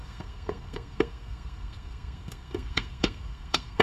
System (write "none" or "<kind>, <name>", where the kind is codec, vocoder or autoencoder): codec, SNAC